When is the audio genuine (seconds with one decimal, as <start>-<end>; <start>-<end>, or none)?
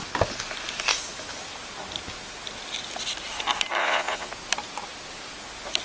0.0-3.8; 4.3-5.8